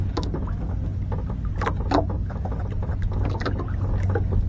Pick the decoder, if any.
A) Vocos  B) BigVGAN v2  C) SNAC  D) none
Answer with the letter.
D